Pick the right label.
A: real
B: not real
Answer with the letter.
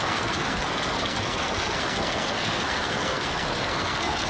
B